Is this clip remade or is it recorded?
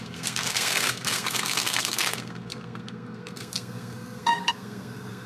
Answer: remade